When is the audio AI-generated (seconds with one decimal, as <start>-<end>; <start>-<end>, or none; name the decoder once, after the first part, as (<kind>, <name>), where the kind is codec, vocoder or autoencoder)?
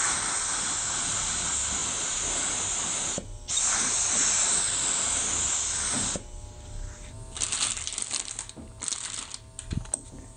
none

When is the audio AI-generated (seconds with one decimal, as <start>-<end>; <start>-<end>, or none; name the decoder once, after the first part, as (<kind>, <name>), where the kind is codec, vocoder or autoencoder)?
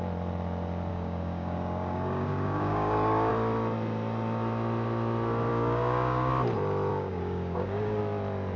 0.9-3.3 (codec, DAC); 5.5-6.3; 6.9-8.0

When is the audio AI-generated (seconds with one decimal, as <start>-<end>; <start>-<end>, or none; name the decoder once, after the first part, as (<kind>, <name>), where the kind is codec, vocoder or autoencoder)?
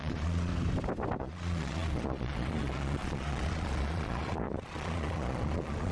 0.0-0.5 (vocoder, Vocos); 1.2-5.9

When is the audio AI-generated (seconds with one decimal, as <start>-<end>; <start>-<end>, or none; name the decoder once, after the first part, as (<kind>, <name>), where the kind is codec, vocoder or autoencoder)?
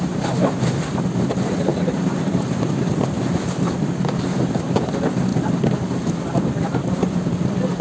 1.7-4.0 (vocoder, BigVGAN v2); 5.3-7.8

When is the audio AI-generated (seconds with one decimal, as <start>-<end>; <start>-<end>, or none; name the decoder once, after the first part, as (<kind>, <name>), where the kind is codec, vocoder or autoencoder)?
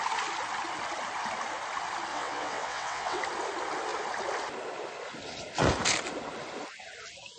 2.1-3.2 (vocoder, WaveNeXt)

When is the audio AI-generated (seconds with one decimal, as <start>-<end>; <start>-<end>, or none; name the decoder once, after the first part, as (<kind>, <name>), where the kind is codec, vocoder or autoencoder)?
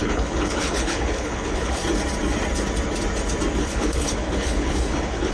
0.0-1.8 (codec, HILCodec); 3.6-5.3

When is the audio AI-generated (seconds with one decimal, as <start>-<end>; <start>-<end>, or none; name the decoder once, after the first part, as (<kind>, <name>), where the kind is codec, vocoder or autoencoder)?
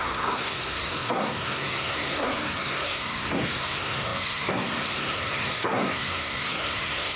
0.0-7.2 (codec, SNAC)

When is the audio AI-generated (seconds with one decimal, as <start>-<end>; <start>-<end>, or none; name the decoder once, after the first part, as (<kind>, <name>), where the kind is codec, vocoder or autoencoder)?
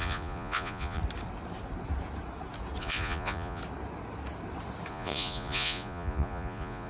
0.0-1.0 (vocoder, Vocos); 2.8-3.6; 4.9-6.9